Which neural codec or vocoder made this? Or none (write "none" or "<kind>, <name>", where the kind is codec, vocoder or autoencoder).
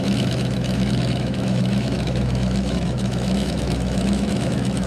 autoencoder, DAC-VAE